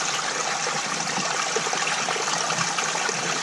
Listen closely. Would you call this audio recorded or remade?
recorded